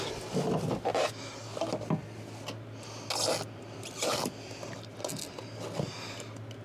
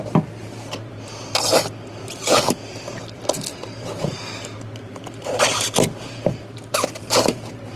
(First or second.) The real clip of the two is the first